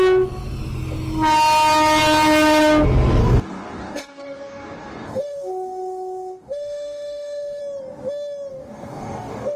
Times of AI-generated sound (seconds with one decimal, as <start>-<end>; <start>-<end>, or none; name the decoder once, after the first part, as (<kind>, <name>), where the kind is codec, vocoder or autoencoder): 3.2-7.6 (codec, DAC); 8.5-9.6